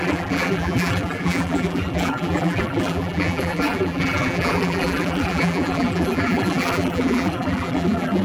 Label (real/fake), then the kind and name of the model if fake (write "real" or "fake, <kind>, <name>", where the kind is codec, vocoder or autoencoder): fake, vocoder, BigVGAN v2